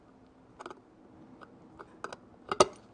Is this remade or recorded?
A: recorded